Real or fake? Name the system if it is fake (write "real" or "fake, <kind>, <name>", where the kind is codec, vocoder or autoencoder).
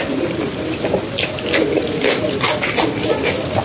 real